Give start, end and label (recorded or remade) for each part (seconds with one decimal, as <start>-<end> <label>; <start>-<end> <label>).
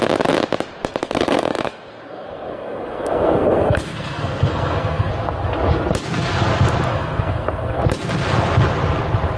0.0-1.0 recorded; 1.0-5.1 remade; 5.1-6.9 recorded; 6.9-7.8 remade; 7.8-9.4 recorded